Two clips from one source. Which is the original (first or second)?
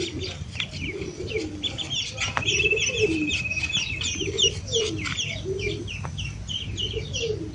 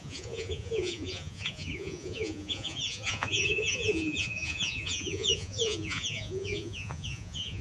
first